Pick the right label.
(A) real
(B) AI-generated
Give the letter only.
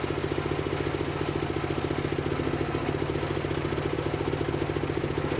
A